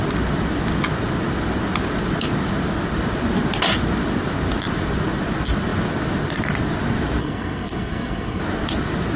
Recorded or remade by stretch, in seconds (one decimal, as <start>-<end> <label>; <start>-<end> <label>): 0.0-7.2 recorded; 7.2-8.4 remade; 8.4-9.2 recorded